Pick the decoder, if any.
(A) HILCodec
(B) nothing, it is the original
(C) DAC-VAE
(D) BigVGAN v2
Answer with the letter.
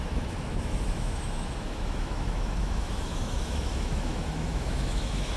C